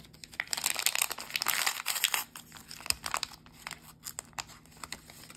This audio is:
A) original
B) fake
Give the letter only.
A